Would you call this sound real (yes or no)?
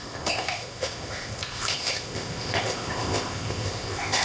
no